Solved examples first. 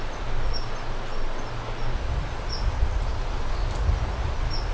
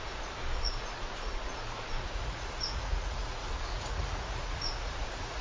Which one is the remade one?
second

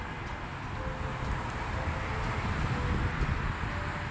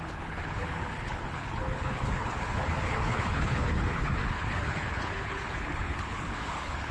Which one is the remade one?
second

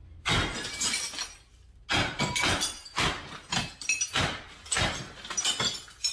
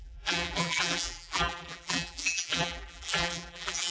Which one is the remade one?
second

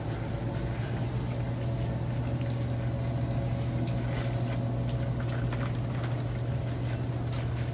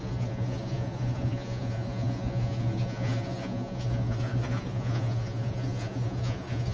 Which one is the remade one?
second